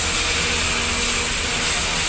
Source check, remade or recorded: recorded